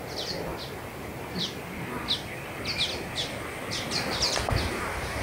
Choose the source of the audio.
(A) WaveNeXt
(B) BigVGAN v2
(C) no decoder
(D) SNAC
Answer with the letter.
C